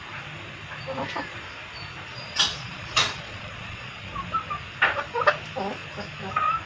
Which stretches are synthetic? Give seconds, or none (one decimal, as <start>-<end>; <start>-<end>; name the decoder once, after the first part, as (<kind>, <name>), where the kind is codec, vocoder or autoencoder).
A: 2.1-4.1 (vocoder, Vocos)